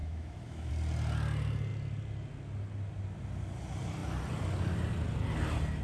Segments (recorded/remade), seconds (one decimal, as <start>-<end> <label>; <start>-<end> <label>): 0.0-0.7 remade; 0.7-5.8 recorded